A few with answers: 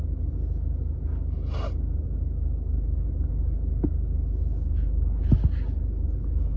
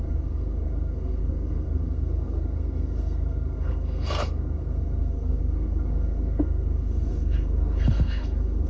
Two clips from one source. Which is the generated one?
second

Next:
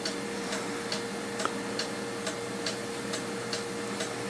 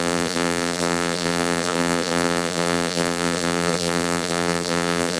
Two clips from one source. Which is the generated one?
second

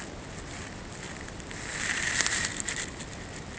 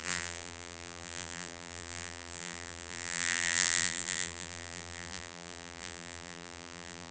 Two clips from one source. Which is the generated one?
second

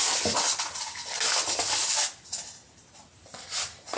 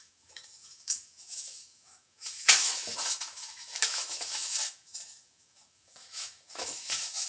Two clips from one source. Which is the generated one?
second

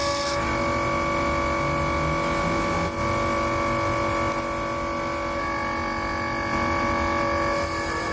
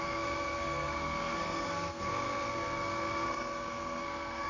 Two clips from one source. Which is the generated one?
second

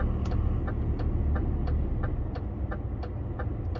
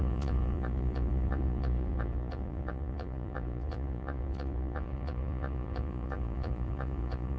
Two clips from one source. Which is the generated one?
second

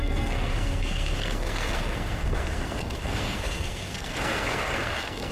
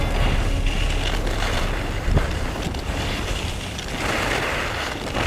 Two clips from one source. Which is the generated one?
first